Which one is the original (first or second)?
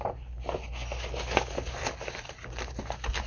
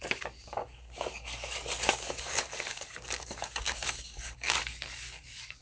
first